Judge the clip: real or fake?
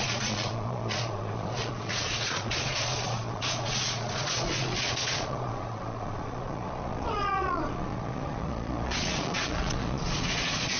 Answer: fake